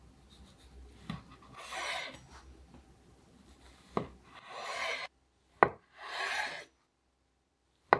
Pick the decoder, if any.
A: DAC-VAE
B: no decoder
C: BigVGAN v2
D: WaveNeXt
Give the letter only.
B